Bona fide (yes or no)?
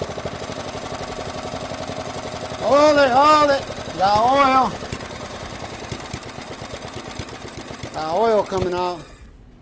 yes